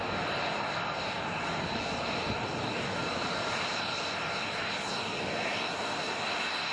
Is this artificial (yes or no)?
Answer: no